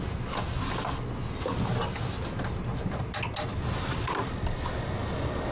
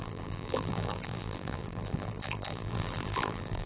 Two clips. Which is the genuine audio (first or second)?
first